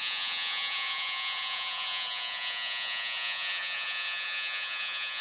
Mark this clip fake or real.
fake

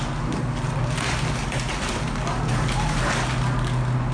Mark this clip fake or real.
real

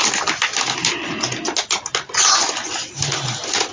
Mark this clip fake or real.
real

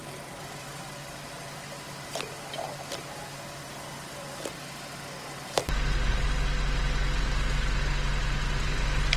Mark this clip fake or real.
real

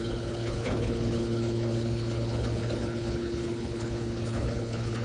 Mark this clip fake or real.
fake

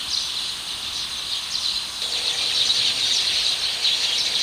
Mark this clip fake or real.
real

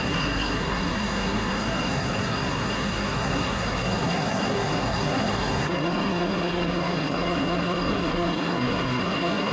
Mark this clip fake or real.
fake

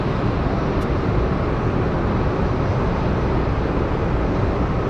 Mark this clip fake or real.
real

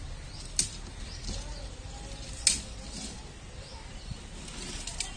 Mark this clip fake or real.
real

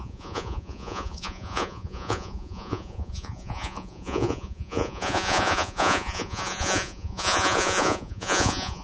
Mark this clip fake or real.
fake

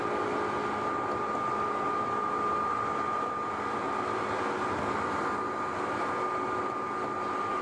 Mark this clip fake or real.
real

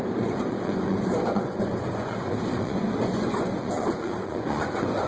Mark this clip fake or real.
fake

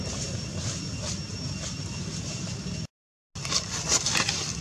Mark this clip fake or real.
real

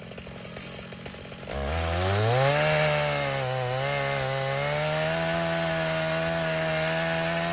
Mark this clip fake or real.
real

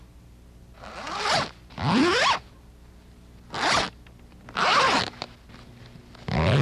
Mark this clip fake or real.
real